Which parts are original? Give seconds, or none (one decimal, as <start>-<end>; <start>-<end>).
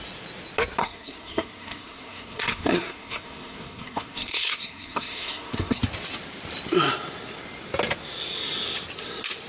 0.0-0.8; 5.8-9.5